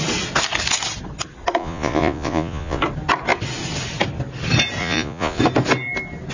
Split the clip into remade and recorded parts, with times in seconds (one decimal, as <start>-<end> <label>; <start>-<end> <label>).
0.0-1.6 recorded; 1.6-2.8 remade; 2.8-4.8 recorded; 4.8-5.4 remade; 5.4-6.3 recorded